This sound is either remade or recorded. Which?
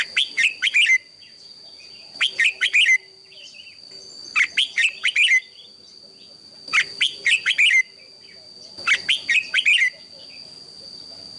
recorded